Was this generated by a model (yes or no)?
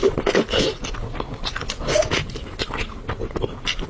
no